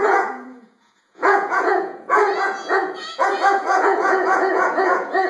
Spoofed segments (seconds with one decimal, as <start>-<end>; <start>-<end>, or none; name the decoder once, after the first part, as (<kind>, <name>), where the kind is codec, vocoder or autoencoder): 0.0-5.3 (vocoder, Vocos)